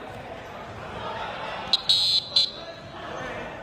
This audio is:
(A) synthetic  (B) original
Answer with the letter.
B